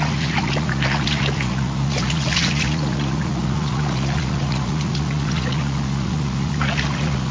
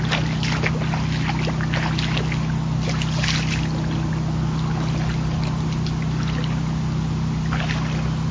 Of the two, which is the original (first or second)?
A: second